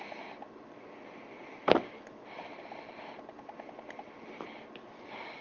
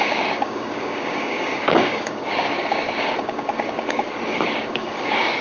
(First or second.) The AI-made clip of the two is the second